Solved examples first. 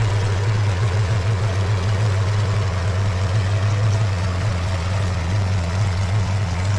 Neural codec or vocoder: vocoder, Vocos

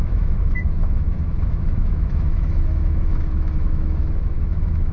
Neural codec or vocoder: autoencoder, DAC-VAE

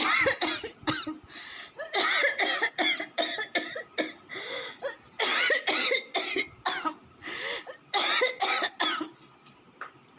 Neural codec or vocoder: none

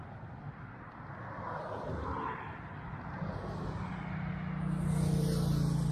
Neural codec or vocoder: none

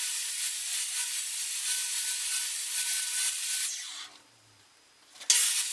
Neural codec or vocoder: none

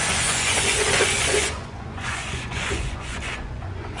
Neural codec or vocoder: vocoder, Vocos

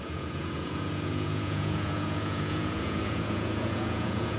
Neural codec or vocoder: vocoder, Vocos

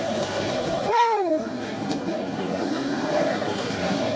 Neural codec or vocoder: codec, SNAC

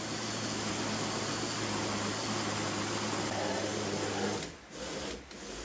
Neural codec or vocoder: none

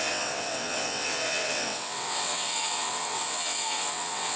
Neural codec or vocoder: vocoder, WaveNeXt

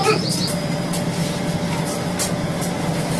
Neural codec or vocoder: none